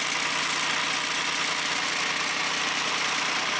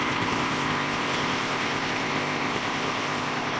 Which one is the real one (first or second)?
first